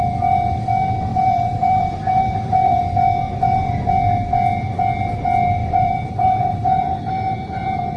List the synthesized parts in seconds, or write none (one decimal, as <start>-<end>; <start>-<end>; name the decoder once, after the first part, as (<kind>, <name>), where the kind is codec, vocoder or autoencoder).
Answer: 1.1-2.8 (vocoder, BigVGAN v2); 5.6-6.8